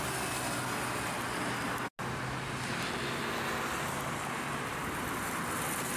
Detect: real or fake real